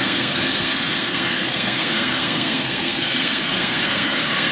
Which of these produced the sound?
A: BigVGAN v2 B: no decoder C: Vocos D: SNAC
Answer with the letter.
D